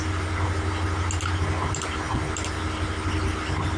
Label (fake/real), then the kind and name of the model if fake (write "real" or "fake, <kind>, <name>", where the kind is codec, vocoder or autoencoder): real